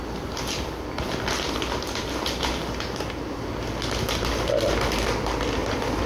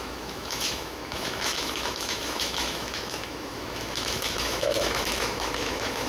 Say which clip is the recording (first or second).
first